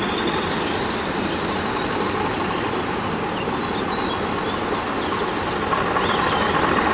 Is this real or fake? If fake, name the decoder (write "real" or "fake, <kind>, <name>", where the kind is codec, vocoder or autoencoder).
real